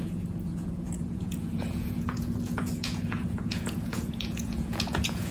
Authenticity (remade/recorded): remade